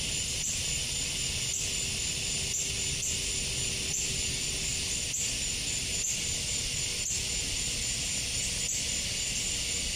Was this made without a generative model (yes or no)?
yes